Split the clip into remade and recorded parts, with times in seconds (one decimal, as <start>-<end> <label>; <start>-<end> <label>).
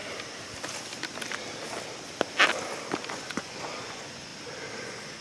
0.0-3.1 recorded; 3.1-4.3 remade; 4.3-4.8 recorded; 4.8-5.2 remade